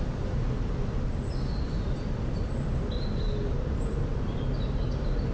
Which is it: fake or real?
real